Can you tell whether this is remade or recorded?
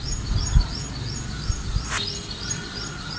recorded